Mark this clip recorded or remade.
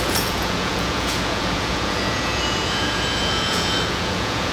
remade